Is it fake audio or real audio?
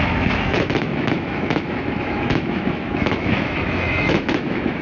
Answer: fake